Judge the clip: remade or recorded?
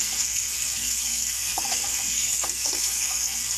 remade